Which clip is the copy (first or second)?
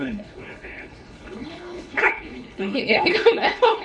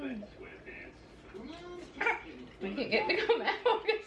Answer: first